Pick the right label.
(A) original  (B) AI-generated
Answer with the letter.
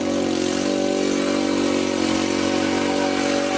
A